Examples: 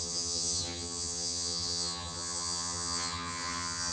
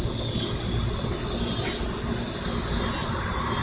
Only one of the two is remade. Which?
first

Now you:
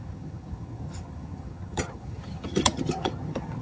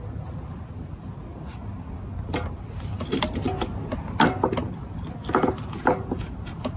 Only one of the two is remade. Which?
first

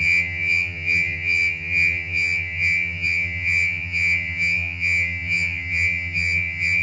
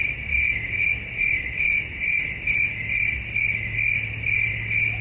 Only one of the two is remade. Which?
first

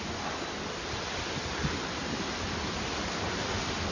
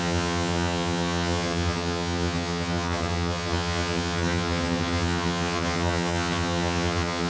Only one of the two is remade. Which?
second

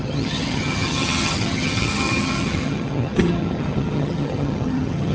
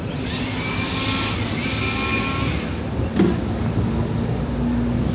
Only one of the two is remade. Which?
first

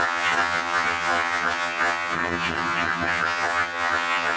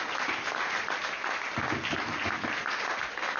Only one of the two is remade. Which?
first